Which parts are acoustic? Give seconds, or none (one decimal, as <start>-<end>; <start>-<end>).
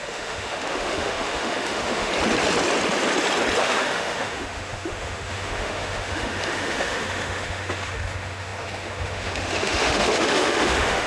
2.1-3.6